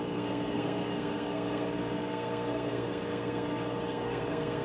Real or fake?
fake